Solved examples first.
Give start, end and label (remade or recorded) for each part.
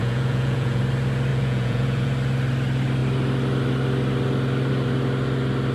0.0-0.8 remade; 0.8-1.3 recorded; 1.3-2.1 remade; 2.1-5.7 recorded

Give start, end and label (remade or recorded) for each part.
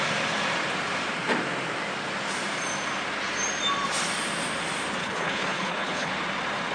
0.0-5.0 recorded; 5.0-6.1 remade; 6.1-6.7 recorded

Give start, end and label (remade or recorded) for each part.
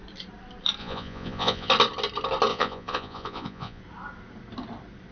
0.0-0.8 recorded; 0.8-1.7 remade; 1.7-2.5 recorded; 2.5-3.8 remade; 3.8-5.1 recorded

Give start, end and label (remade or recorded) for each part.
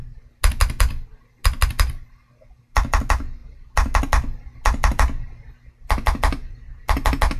0.0-7.4 recorded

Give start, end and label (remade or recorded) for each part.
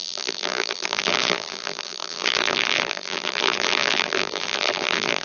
0.0-5.2 remade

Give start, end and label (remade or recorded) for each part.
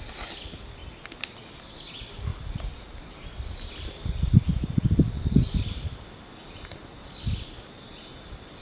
0.0-8.6 recorded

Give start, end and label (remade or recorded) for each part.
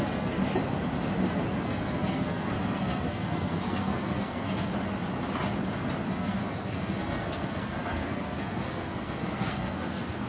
0.0-0.4 remade; 0.4-1.6 recorded; 1.6-4.7 remade; 4.7-6.1 recorded; 6.1-10.3 remade